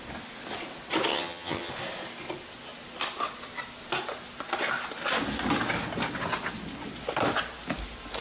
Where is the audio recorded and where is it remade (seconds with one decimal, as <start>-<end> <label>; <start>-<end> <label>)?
0.0-1.1 recorded; 1.1-1.7 remade; 1.7-8.2 recorded

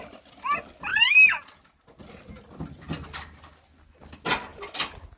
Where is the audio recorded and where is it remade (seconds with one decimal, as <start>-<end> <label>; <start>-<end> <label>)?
0.0-5.2 recorded

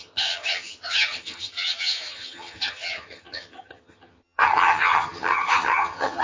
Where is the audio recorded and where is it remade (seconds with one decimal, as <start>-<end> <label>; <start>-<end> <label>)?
0.0-6.2 remade

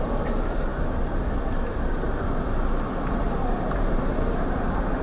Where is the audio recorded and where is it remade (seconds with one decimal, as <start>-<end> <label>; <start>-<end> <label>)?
0.0-5.0 recorded

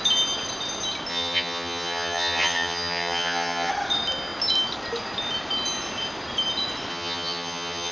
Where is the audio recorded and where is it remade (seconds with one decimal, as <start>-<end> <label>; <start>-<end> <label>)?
0.0-1.1 recorded; 1.1-3.7 remade; 3.7-6.9 recorded; 6.9-7.9 remade

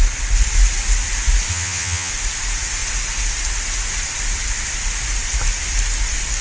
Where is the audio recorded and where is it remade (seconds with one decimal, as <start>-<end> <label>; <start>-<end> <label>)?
0.0-1.5 recorded; 1.5-2.1 remade; 2.1-6.4 recorded

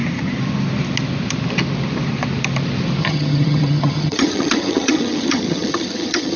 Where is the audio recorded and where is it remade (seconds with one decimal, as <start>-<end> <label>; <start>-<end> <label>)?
0.0-3.0 recorded; 3.0-6.4 remade